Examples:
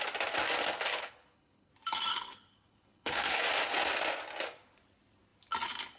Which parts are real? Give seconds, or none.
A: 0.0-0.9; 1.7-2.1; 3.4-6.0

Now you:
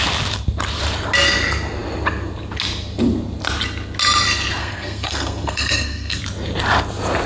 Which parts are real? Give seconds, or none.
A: 0.0-4.6; 6.2-7.3